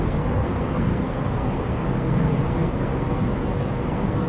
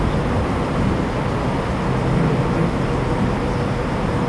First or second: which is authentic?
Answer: second